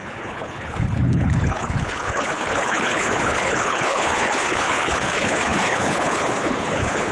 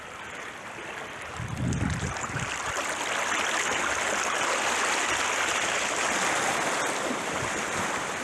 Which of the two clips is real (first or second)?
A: second